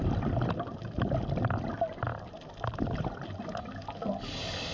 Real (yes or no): yes